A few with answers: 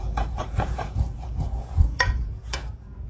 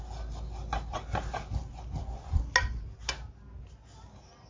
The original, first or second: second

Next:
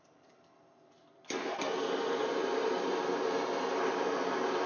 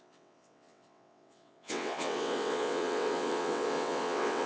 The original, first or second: first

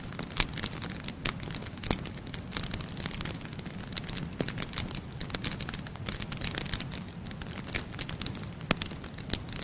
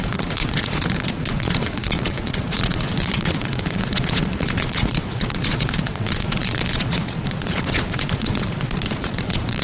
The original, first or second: first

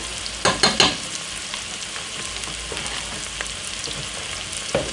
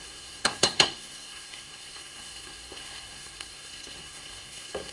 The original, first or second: first